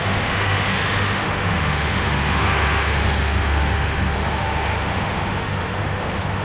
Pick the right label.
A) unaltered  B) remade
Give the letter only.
B